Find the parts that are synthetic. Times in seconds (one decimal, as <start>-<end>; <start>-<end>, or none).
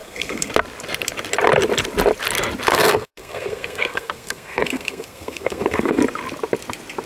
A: 0.0-0.5; 2.7-6.0